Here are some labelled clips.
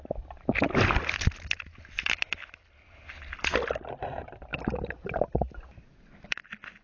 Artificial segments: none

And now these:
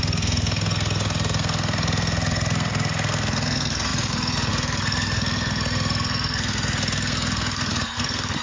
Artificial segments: 0.0-8.4 (codec, SNAC)